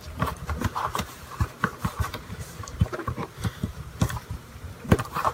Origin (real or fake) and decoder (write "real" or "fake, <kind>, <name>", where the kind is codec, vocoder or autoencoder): fake, vocoder, BigVGAN v2